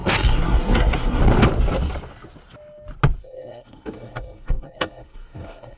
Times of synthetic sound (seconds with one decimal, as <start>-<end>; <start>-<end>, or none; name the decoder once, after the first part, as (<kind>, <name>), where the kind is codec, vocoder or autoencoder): 0.0-1.2 (codec, SNAC); 3.2-5.8